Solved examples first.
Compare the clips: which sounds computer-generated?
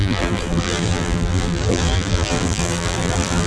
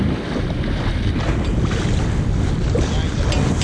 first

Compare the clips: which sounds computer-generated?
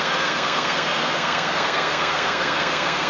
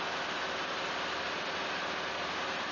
first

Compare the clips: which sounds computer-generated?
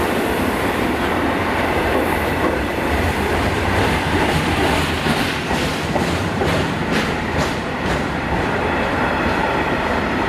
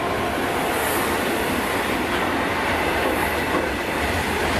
first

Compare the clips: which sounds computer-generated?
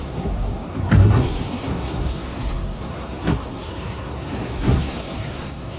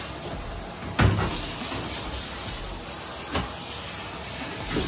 first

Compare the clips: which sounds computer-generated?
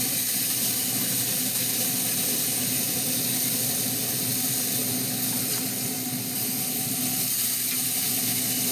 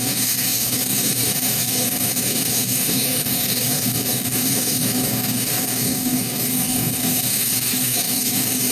second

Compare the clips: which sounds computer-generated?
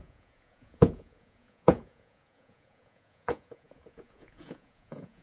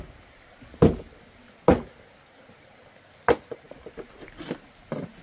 first